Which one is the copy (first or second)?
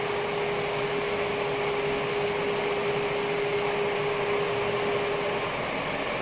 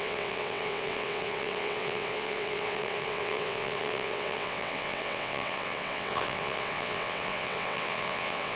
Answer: second